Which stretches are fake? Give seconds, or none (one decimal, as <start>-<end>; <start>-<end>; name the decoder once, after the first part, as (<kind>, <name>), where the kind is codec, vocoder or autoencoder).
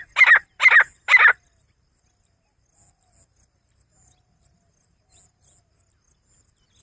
none